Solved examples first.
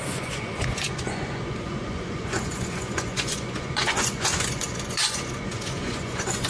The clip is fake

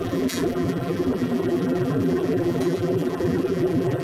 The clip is fake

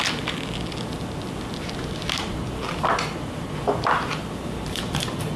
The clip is real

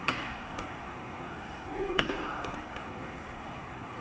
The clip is fake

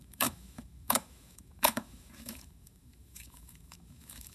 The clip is fake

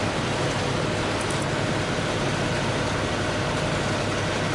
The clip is real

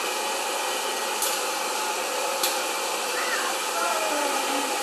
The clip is fake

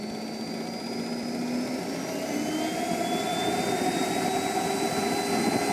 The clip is real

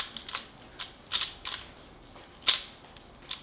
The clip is real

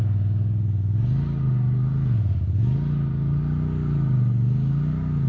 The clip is real